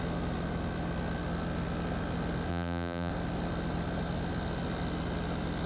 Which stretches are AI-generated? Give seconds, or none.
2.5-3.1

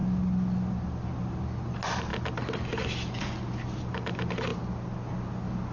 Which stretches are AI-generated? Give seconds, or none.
none